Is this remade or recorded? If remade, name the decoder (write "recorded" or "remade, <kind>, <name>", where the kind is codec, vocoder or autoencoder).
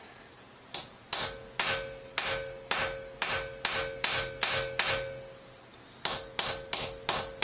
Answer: recorded